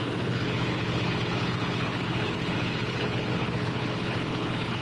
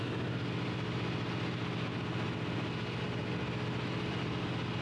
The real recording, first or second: second